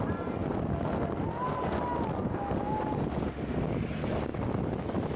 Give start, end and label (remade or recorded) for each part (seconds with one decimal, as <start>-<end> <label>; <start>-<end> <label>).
0.0-5.2 recorded